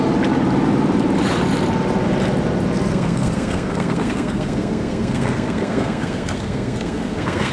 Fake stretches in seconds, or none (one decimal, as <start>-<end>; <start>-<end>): 2.9-7.5